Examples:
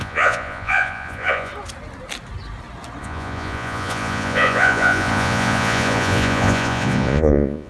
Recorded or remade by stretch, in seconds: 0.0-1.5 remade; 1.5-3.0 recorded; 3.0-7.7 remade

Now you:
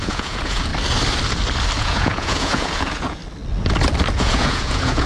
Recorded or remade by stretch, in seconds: 0.0-0.7 remade; 0.7-1.8 recorded; 1.8-3.2 remade; 3.2-4.1 recorded; 4.1-5.1 remade

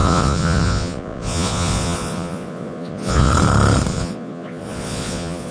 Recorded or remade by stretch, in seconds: 0.0-3.3 remade; 3.3-3.9 recorded; 3.9-5.5 remade

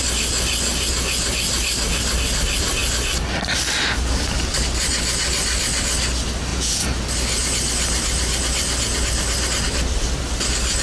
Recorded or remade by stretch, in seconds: 0.0-6.5 recorded; 6.5-7.0 remade; 7.0-10.8 recorded

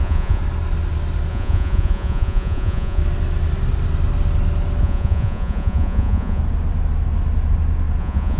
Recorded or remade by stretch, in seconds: 0.0-0.4 remade; 0.4-1.3 recorded; 1.3-3.0 remade; 3.0-4.8 recorded; 4.8-6.4 remade; 6.4-8.0 recorded; 8.0-8.4 remade

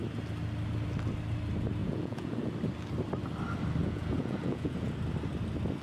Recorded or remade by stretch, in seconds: 0.0-1.8 recorded; 1.8-2.5 remade; 2.5-3.8 recorded; 3.8-4.9 remade; 4.9-5.8 recorded

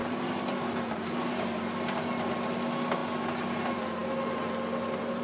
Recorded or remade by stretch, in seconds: 0.0-5.2 recorded